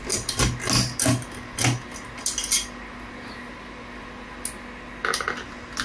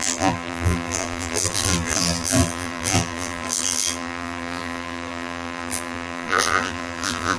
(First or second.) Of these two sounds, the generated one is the second